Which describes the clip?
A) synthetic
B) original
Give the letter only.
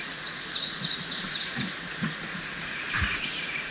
A